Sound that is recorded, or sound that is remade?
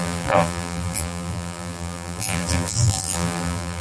remade